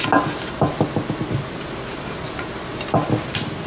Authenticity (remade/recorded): recorded